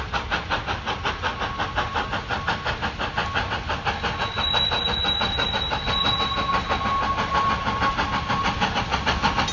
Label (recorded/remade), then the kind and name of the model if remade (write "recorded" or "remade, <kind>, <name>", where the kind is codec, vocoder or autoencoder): recorded